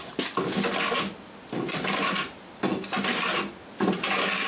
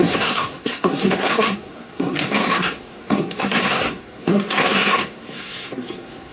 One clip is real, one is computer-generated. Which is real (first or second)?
first